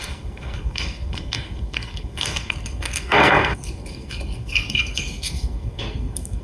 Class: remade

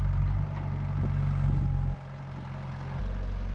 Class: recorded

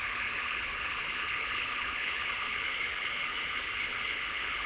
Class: remade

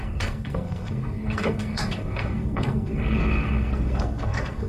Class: remade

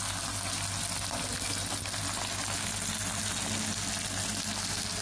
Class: recorded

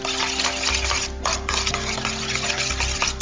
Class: recorded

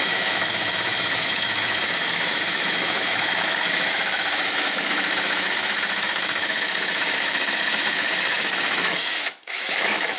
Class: remade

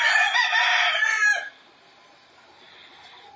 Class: recorded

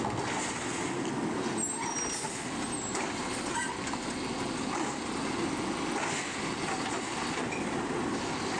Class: recorded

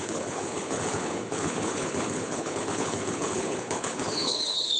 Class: remade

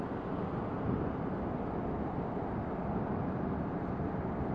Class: recorded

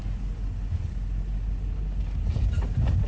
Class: recorded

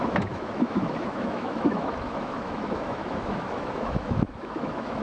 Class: remade